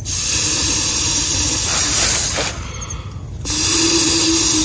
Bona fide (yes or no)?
yes